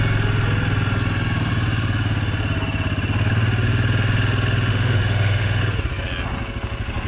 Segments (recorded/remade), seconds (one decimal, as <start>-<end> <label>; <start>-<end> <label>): 0.0-4.7 recorded; 4.7-5.6 remade; 5.6-7.1 recorded

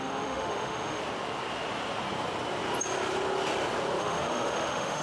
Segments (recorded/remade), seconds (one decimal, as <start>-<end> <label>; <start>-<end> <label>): 0.0-1.0 remade; 1.0-4.0 recorded; 4.0-5.0 remade